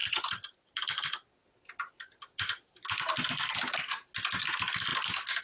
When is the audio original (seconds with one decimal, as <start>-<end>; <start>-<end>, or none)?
0.8-5.4